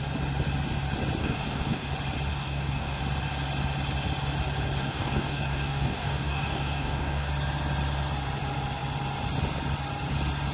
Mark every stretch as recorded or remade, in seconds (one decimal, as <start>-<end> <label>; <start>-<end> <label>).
0.0-1.2 recorded; 1.2-1.9 remade; 1.9-2.3 recorded; 2.3-3.0 remade; 3.0-4.8 recorded; 4.8-7.3 remade; 7.3-10.5 recorded